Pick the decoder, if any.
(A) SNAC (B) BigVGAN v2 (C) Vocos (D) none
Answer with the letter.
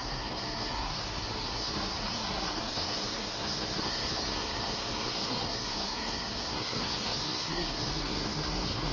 A